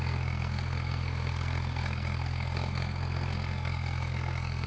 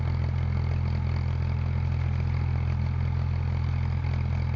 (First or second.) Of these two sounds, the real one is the second